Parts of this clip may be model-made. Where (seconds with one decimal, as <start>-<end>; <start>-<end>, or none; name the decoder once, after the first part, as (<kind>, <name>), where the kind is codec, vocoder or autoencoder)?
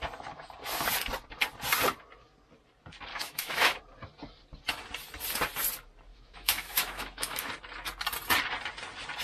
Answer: 3.1-3.8 (autoencoder, DAC-VAE); 6.1-7.5